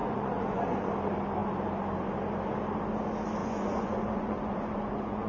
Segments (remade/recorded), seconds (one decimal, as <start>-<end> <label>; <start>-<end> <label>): 0.0-0.9 remade; 0.9-3.4 recorded; 3.4-5.3 remade